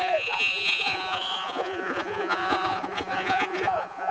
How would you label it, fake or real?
fake